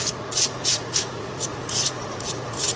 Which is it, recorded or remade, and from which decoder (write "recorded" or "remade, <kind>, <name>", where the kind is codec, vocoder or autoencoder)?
remade, vocoder, Vocos